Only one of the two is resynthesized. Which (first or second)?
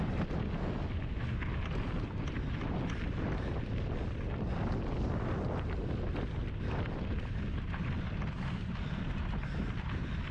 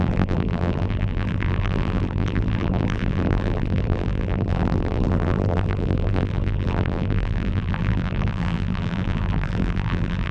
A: second